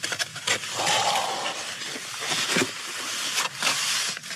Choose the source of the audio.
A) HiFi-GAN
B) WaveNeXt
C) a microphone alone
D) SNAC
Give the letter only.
C